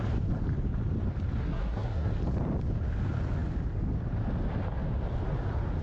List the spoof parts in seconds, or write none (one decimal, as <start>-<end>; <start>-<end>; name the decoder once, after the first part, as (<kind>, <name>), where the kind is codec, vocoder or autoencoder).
1.4-2.1 (codec, SNAC)